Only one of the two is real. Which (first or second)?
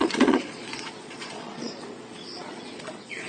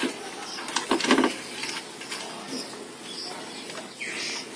second